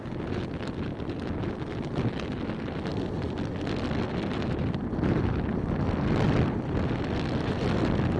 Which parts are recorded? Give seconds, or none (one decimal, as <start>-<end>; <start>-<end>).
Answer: 0.0-8.2